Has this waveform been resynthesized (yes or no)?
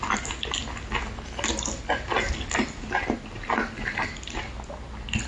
no